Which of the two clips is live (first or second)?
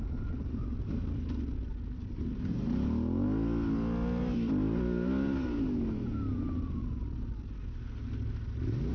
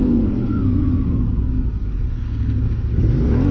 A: first